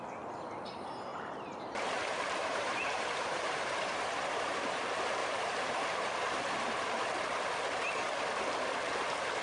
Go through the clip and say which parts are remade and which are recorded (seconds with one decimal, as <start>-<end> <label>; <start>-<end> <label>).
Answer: 0.0-1.1 recorded; 1.1-4.8 remade; 4.8-5.2 recorded; 5.2-6.9 remade; 6.9-9.4 recorded